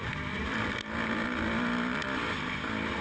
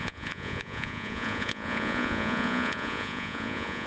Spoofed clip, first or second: second